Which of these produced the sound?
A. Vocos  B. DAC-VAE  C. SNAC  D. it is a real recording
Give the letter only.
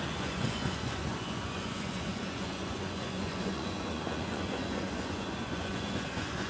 A